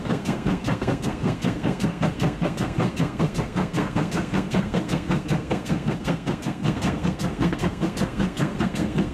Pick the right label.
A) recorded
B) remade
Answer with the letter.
B